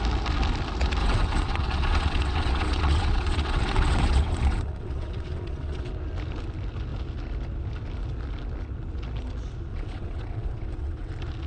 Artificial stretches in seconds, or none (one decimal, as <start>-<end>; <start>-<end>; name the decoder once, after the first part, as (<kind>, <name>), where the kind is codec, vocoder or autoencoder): 1.0-5.9 (vocoder, WaveNeXt); 9.7-11.1